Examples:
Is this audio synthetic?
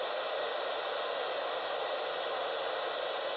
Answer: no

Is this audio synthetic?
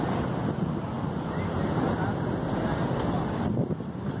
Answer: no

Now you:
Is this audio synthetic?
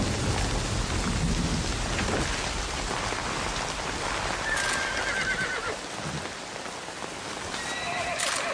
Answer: no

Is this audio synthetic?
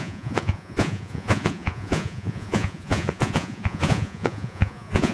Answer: yes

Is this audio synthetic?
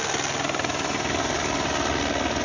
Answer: no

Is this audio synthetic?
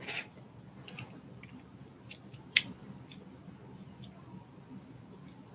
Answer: no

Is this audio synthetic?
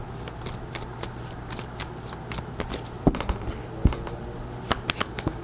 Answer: no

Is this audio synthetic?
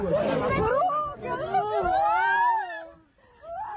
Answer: no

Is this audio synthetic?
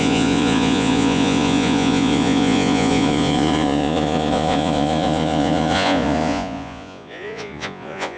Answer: yes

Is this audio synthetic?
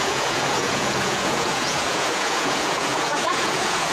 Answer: yes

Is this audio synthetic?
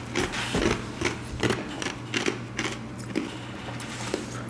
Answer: no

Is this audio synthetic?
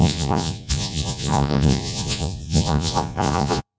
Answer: yes